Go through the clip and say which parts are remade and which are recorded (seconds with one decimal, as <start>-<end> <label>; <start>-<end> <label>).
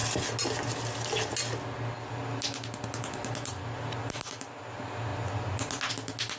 0.0-6.4 recorded